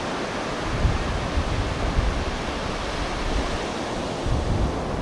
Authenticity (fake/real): real